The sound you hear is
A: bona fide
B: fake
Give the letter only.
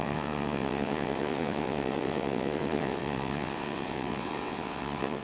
B